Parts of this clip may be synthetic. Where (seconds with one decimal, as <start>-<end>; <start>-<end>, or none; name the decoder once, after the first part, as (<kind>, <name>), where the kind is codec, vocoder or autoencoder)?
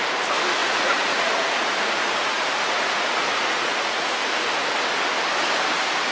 0.6-4.0 (vocoder, Vocos)